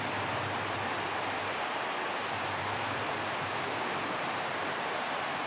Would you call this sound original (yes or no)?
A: yes